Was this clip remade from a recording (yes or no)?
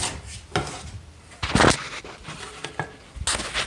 no